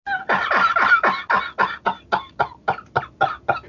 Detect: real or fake real